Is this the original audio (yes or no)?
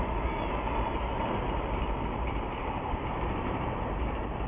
no